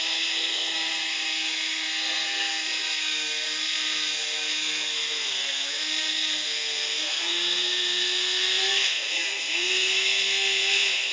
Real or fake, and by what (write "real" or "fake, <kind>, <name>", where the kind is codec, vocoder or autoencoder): fake, codec, SNAC